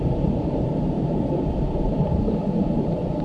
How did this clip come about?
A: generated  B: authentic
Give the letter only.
A